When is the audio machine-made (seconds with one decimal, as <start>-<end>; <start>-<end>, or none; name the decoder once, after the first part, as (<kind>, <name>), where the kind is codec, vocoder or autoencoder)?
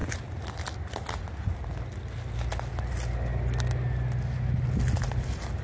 none